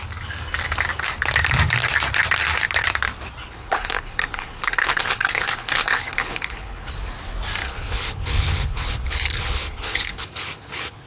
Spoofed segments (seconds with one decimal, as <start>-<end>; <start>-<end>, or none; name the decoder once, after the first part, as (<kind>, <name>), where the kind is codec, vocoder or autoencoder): 3.4-6.9 (codec, HILCodec); 7.6-11.1